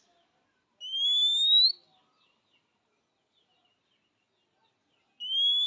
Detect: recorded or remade recorded